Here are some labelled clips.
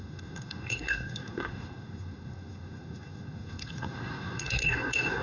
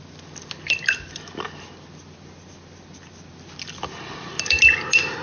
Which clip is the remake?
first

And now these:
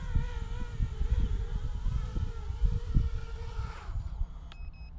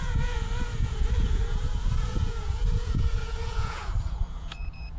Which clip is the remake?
second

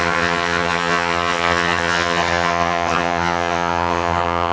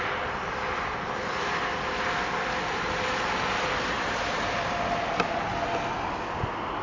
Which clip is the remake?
first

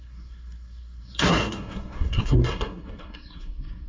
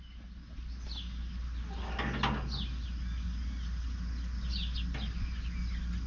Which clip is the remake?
first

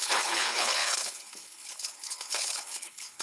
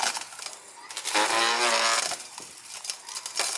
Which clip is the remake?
first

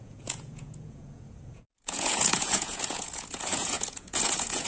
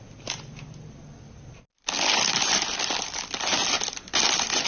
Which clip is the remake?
first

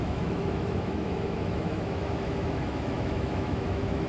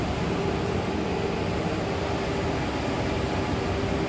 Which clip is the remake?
first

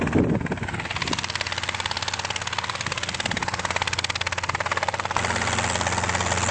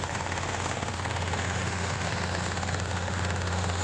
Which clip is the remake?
second